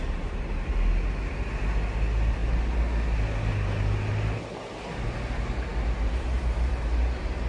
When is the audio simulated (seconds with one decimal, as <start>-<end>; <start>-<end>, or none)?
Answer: none